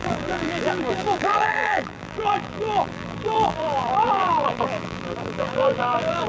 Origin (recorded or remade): remade